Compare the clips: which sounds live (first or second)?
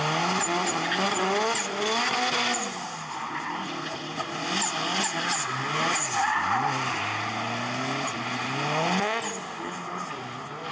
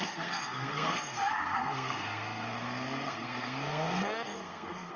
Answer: first